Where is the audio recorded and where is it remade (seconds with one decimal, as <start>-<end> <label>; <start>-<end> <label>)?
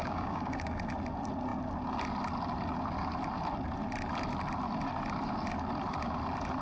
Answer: 0.0-0.9 remade; 0.9-6.6 recorded